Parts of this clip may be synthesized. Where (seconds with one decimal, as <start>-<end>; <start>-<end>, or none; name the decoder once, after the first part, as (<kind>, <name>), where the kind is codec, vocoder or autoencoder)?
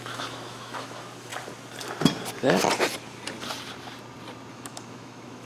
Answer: 0.0-1.3 (autoencoder, DAC-VAE); 4.5-5.4